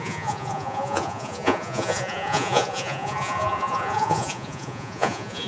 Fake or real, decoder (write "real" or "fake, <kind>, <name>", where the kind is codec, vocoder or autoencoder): fake, vocoder, Vocos